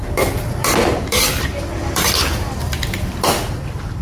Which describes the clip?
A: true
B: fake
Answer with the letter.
B